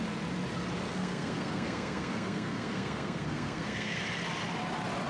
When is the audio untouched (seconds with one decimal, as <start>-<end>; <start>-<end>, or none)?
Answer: 0.0-0.9; 4.0-5.1